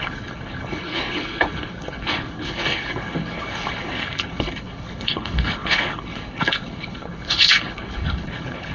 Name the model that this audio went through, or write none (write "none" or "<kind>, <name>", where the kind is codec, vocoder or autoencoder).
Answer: codec, HILCodec